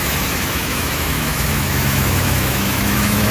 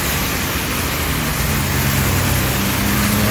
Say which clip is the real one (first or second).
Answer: second